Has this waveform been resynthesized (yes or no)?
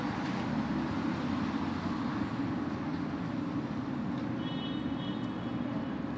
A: no